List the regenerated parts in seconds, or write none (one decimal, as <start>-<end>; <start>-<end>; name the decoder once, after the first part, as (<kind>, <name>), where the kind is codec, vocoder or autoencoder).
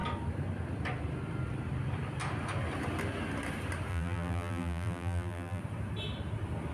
3.9-5.6 (vocoder, BigVGAN v2)